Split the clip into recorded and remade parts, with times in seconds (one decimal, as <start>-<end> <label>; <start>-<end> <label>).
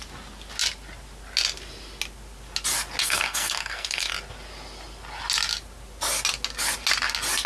0.0-3.0 recorded; 3.0-4.1 remade; 4.1-7.5 recorded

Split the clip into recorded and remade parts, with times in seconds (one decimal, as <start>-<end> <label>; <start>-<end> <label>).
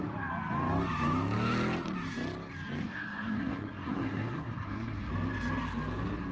0.0-2.8 recorded; 2.8-5.1 remade; 5.1-6.3 recorded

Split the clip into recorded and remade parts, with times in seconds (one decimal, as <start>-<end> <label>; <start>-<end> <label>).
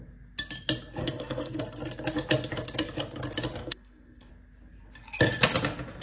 0.0-1.0 recorded; 1.0-1.6 remade; 1.6-3.6 recorded; 3.6-4.3 remade; 4.3-6.0 recorded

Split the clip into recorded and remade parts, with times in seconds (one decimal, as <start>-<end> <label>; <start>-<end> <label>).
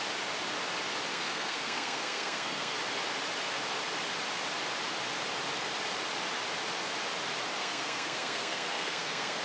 0.0-1.1 recorded; 1.1-2.8 remade; 2.8-7.6 recorded; 7.6-9.4 remade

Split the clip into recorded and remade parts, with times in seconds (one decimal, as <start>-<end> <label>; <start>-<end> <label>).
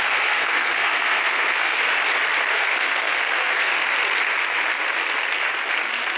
0.0-1.8 remade; 1.8-2.5 recorded; 2.5-3.7 remade; 3.7-6.2 recorded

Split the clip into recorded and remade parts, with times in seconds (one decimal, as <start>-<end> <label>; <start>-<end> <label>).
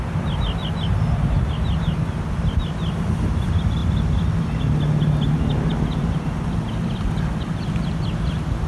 0.0-8.7 recorded